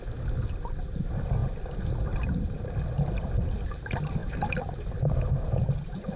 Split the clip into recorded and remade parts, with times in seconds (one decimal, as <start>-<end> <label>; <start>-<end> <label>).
0.0-4.2 recorded; 4.2-6.2 remade